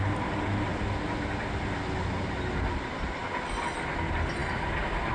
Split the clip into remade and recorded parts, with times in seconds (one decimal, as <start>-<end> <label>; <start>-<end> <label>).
0.0-5.1 recorded